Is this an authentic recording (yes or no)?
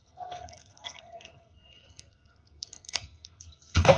no